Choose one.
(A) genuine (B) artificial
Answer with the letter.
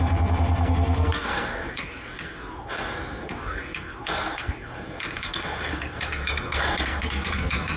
B